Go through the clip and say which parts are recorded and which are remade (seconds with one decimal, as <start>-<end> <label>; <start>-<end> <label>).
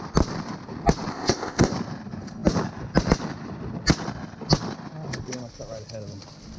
0.0-1.1 recorded; 1.1-1.7 remade; 1.7-6.6 recorded